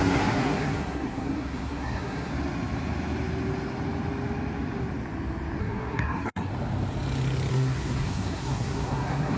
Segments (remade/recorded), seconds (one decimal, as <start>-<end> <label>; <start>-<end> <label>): 0.0-2.3 remade; 2.3-5.6 recorded; 5.6-6.5 remade; 6.5-7.5 recorded; 7.5-9.4 remade